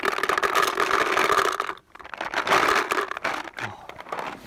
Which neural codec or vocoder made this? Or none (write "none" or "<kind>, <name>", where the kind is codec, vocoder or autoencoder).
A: none